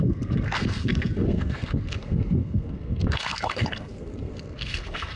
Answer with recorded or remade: remade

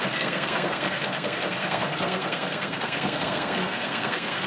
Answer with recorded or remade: remade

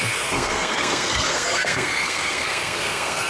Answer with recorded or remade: remade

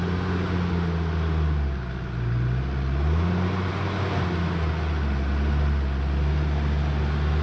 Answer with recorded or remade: recorded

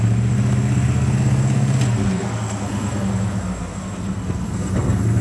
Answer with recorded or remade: remade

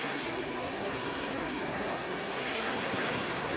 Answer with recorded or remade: remade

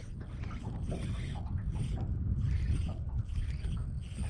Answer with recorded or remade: recorded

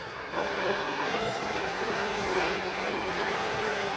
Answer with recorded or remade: remade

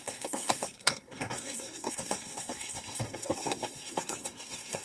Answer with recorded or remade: remade